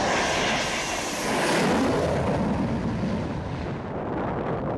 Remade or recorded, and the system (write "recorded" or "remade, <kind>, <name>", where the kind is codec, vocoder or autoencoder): recorded